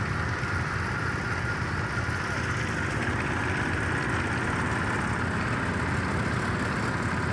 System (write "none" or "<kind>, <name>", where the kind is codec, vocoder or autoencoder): none